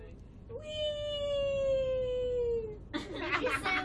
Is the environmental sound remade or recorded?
recorded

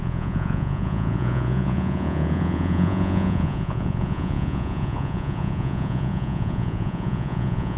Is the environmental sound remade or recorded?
remade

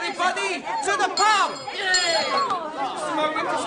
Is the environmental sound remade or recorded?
recorded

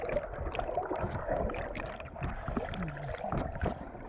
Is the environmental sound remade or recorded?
recorded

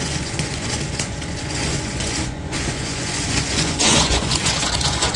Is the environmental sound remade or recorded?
remade